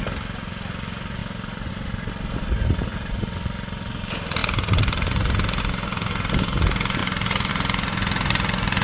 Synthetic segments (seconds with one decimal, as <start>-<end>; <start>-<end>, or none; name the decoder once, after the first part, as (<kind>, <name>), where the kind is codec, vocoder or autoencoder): 1.2-1.7 (vocoder, BigVGAN v2)